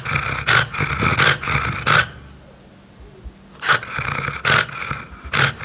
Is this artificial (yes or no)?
no